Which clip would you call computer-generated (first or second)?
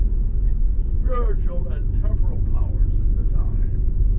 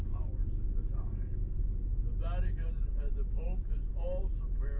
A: first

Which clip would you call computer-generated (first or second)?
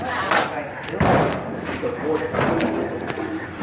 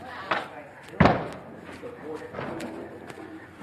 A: first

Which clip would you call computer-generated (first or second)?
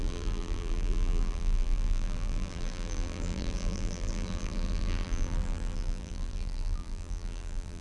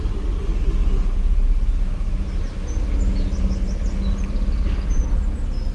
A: first